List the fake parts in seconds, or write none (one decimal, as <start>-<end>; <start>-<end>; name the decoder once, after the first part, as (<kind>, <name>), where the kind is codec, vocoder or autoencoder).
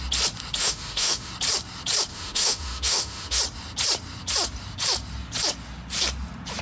0.6-1.3 (autoencoder, DAC-VAE); 2.1-3.4